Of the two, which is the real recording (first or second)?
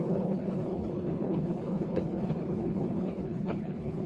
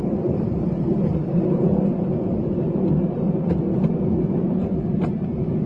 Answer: second